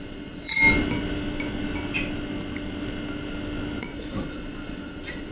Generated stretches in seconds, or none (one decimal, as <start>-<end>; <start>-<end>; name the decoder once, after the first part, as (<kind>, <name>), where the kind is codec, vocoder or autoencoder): 0.0-0.6 (vocoder, Vocos); 3.8-5.3